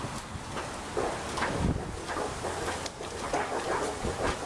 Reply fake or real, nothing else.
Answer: real